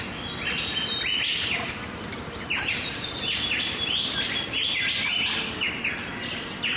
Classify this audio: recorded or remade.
recorded